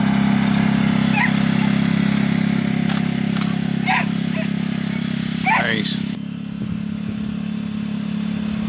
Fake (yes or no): no